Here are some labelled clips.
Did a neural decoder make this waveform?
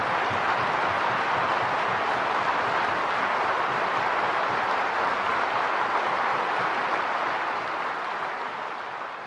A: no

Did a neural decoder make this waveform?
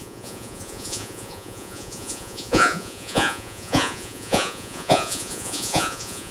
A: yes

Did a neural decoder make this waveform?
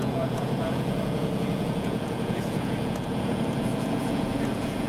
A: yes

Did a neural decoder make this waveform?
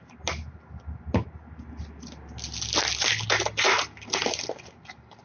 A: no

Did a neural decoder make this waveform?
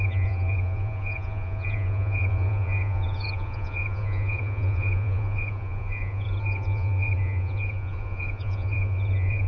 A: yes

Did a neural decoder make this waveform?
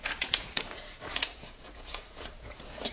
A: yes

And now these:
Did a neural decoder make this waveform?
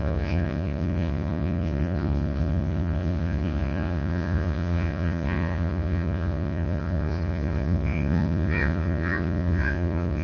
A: yes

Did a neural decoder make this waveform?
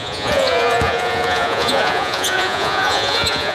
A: yes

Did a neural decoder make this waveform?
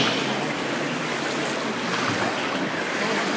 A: no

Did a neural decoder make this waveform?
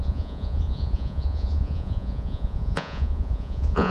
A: yes